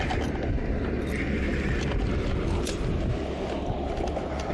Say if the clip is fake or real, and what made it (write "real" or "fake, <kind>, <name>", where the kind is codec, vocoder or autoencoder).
real